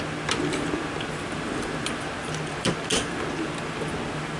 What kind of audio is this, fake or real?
real